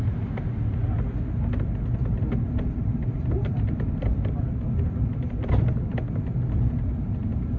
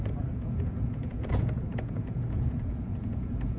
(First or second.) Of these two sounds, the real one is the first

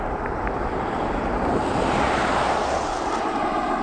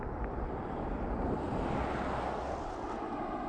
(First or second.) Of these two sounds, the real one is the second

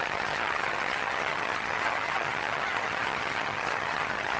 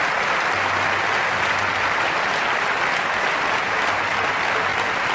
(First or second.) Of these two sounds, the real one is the second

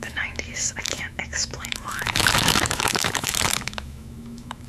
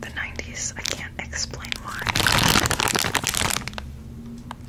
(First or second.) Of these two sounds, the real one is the second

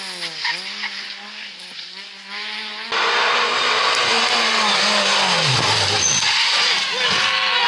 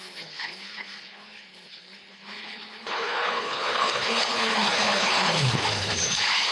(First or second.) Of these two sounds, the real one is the first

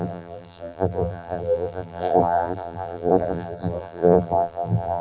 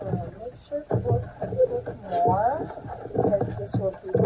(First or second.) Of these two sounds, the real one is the second